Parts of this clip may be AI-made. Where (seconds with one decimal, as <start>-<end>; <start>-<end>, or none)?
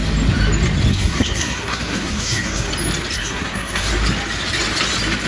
0.9-2.7; 3.2-3.9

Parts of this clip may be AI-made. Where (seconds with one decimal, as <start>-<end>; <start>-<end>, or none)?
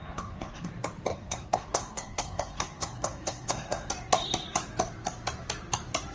0.0-0.7; 1.1-3.9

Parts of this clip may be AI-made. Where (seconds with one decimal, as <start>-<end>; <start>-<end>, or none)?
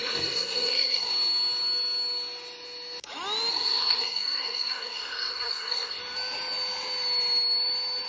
0.0-1.1; 3.5-6.0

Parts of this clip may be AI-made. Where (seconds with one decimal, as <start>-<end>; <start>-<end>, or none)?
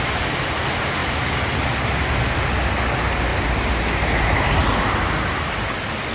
none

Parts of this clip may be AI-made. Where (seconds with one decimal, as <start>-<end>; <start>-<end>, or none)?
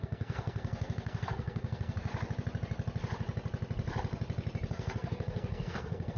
0.0-2.1; 4.7-6.2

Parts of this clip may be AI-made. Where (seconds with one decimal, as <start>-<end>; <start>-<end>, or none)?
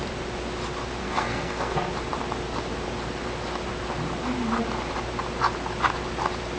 1.0-1.9